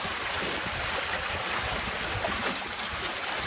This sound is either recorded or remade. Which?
recorded